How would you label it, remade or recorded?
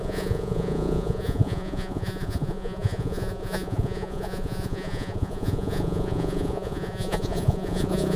remade